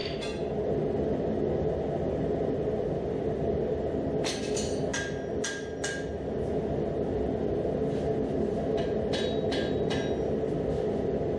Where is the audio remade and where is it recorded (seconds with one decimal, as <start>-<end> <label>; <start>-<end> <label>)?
0.0-11.4 recorded